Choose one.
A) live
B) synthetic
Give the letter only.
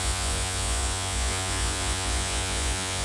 B